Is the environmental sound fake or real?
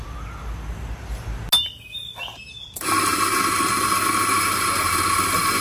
real